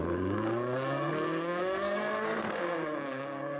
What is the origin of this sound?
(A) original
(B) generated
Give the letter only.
B